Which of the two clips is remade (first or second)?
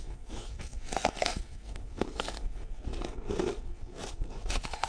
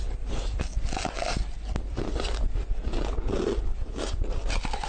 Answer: first